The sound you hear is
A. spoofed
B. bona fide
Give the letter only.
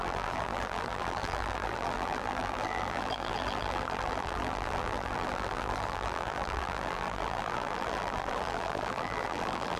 A